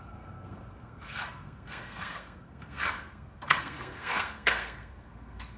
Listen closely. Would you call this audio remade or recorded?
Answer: remade